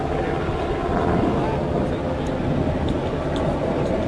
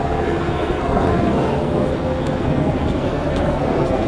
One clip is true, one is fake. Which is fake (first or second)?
second